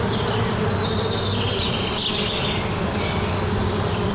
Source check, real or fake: real